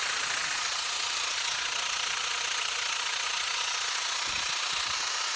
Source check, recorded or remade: remade